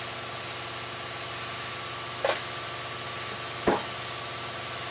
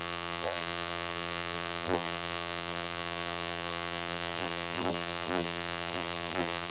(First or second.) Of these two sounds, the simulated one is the second